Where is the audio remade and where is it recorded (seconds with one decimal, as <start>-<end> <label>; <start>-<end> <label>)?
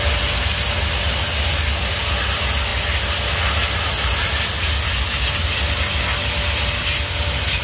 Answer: 0.0-7.6 recorded